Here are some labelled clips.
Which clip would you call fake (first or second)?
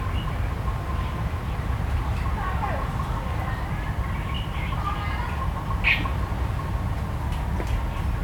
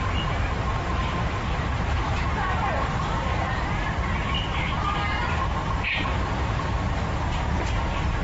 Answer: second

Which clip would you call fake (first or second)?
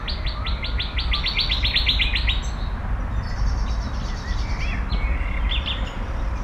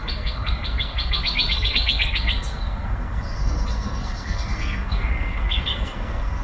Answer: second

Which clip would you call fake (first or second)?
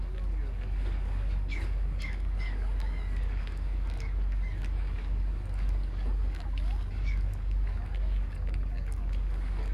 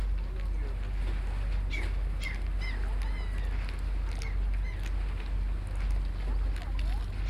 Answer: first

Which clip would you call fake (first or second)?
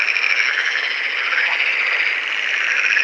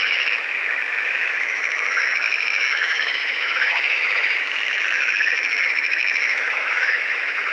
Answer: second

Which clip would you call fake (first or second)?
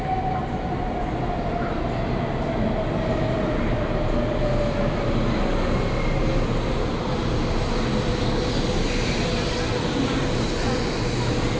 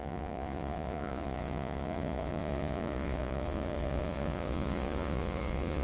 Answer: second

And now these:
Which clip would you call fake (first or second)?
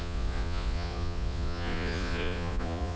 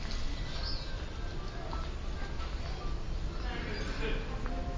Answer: first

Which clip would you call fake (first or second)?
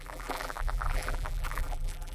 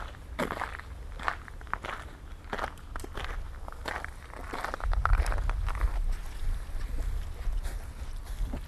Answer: first